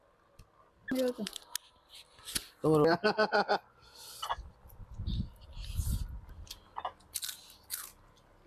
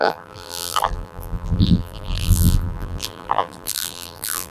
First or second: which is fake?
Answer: second